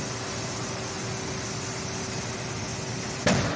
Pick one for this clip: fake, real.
real